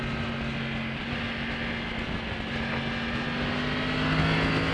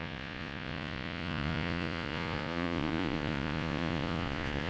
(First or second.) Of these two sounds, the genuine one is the first